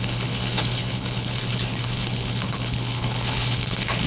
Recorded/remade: remade